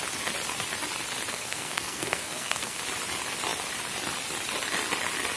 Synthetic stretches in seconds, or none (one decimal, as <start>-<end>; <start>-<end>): 1.3-2.8